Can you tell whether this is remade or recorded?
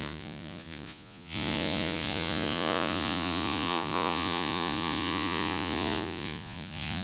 remade